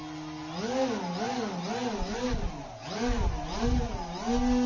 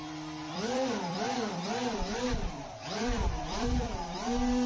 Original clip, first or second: first